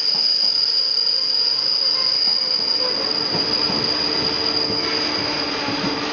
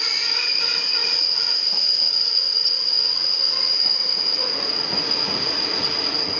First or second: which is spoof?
second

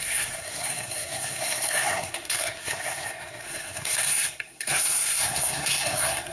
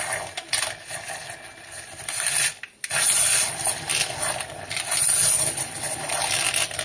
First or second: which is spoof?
first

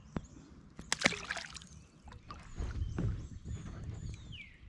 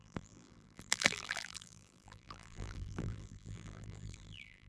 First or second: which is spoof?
second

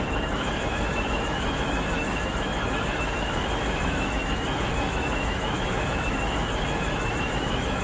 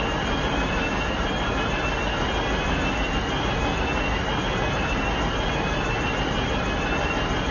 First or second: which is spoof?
first